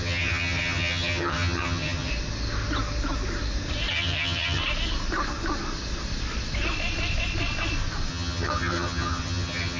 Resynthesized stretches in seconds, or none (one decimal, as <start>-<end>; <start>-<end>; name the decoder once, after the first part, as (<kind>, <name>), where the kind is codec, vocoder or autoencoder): 0.0-2.1 (vocoder, HiFi-GAN); 3.9-4.6; 8.1-9.8